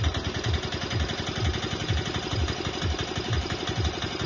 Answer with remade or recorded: recorded